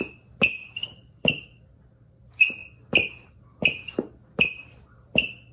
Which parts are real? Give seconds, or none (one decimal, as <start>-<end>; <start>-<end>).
0.0-0.8; 1.3-5.5